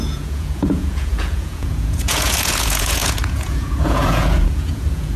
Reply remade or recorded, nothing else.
remade